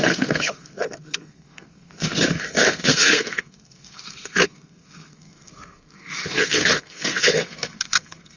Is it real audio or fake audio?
fake